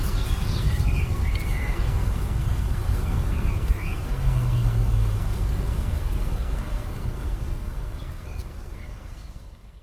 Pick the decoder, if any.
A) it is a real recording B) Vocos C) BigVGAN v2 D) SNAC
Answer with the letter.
D